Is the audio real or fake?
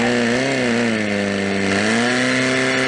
real